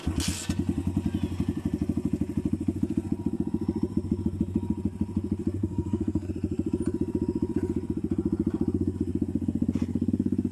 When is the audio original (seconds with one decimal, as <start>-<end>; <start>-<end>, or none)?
0.0-5.6; 6.3-10.5